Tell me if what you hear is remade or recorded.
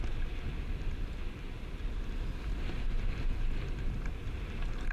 remade